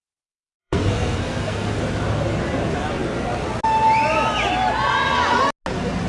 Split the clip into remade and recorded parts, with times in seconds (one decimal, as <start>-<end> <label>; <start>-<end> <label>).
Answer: 0.0-0.6 recorded; 0.6-1.8 remade; 1.8-6.1 recorded